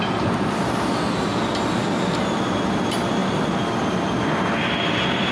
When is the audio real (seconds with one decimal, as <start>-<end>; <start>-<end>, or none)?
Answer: 0.0-5.3